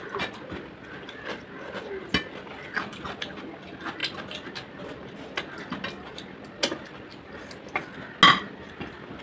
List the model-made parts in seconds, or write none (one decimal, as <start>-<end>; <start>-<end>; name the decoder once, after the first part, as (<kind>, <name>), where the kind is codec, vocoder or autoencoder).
none